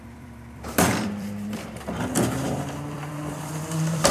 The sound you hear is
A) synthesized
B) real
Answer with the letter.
A